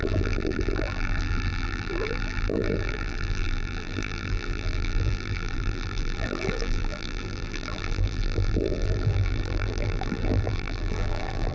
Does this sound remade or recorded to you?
remade